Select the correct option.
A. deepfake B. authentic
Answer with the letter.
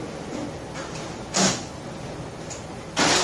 B